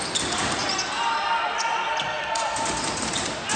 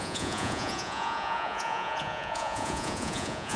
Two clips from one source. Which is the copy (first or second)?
second